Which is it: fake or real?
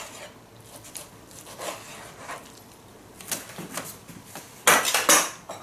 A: real